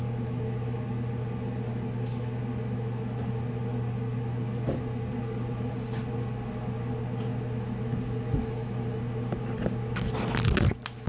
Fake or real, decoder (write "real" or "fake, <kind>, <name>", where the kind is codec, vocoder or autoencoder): real